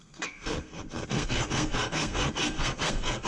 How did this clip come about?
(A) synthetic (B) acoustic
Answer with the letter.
A